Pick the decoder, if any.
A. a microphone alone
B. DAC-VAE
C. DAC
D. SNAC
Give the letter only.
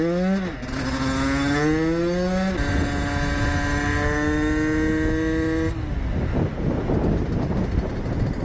A